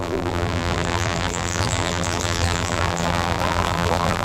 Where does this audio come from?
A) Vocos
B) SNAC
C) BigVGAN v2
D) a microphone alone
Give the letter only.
C